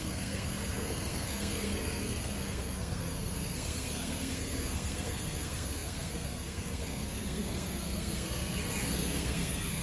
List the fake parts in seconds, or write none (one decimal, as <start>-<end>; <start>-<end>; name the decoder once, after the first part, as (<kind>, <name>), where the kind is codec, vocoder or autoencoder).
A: 0.0-9.8 (codec, SNAC)